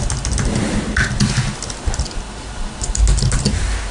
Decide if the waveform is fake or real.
real